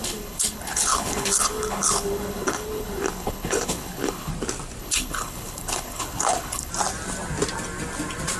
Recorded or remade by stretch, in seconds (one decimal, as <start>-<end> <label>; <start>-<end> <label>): 0.0-4.3 remade; 4.3-4.8 recorded; 4.8-6.7 remade; 6.7-8.4 recorded